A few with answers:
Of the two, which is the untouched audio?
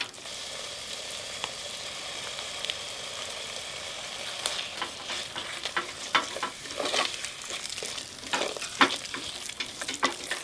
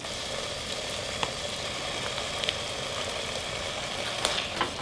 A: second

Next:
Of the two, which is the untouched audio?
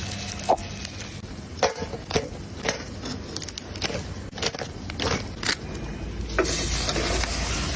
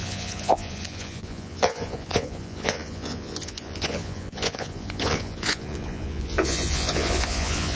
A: first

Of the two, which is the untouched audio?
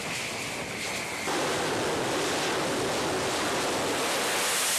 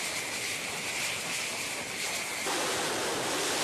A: first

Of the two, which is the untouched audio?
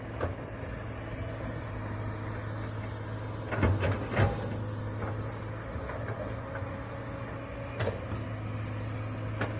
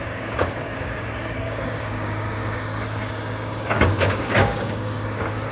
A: first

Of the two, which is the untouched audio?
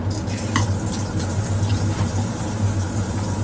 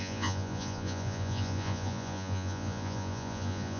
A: first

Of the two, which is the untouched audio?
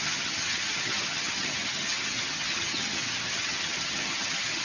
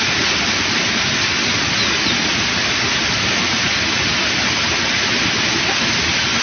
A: second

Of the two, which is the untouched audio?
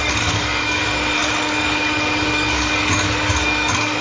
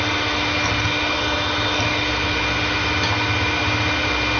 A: second